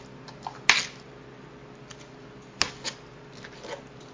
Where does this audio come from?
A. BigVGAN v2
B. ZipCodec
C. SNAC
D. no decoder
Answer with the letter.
D